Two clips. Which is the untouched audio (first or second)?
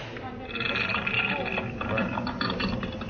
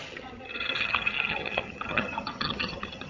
first